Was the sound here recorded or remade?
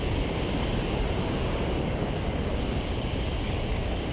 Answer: remade